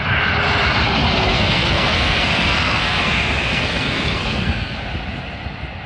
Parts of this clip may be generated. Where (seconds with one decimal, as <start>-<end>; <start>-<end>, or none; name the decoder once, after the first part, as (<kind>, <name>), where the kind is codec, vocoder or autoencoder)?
1.3-4.8 (codec, SNAC)